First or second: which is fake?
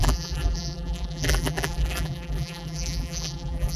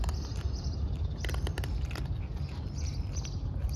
first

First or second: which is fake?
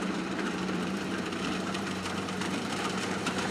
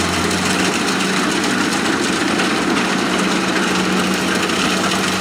first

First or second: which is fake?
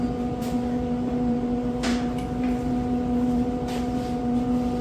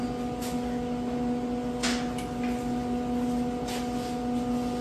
first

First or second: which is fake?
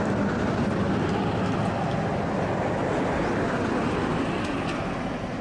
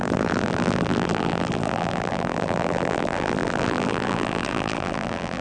second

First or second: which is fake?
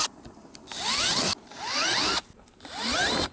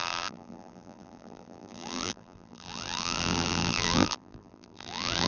second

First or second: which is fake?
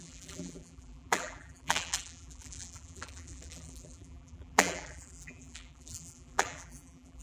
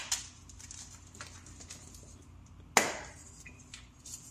first